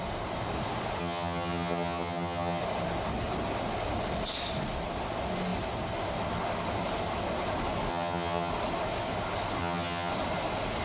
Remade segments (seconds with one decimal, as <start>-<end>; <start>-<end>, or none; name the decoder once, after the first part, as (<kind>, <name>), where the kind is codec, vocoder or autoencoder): 1.0-2.6 (vocoder, HiFi-GAN); 7.9-8.5; 9.6-10.1